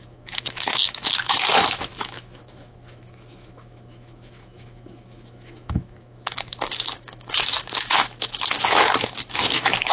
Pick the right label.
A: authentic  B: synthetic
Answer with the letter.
B